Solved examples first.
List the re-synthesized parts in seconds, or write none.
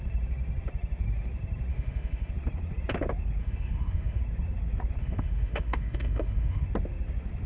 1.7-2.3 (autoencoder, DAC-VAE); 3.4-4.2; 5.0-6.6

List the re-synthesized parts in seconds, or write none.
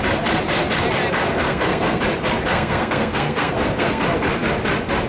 1.3-2.0 (codec, SNAC); 2.5-4.0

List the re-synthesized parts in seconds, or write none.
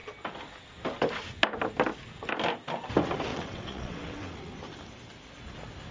3.3-4.6 (vocoder, WaveNeXt)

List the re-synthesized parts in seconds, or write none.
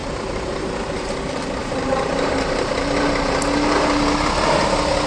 0.0-1.2 (vocoder, BigVGAN v2); 1.6-2.6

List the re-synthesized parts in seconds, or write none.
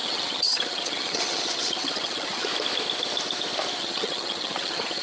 0.0-2.5 (vocoder, HiFi-GAN); 3.8-5.0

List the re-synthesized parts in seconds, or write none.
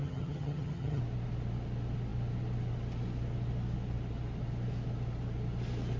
0.0-1.0 (vocoder, HiFi-GAN)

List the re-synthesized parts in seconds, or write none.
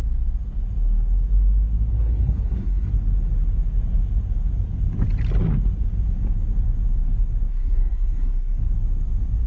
1.9-2.9 (codec, SNAC); 7.5-8.6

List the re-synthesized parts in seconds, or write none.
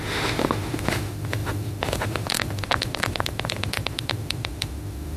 0.0-5.2 (autoencoder, DAC-VAE)